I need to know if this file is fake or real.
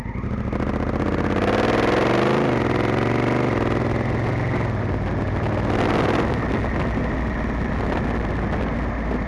real